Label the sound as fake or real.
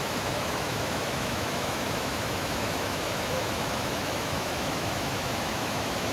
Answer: fake